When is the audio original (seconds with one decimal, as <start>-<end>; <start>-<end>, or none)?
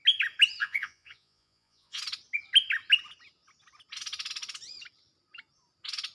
0.0-0.6; 2.0-6.1